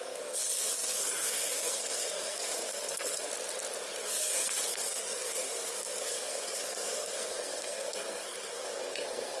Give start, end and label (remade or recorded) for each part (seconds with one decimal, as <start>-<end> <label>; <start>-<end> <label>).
0.0-3.3 remade; 3.3-4.0 recorded; 4.0-9.4 remade